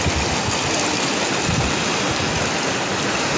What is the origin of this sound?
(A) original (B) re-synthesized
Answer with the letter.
A